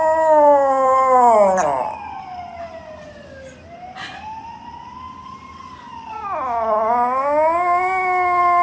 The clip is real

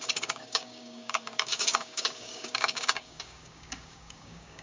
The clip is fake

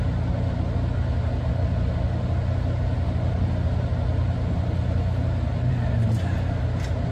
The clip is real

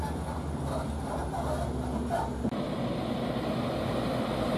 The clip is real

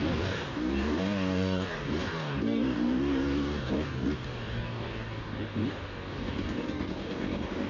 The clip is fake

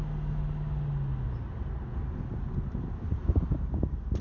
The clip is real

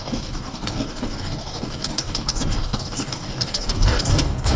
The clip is fake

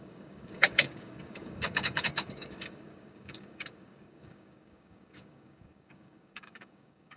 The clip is fake